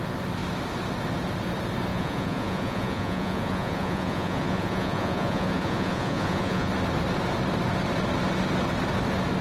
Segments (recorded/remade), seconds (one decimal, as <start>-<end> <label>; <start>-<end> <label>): 0.0-1.9 recorded; 1.9-6.7 remade; 6.7-9.4 recorded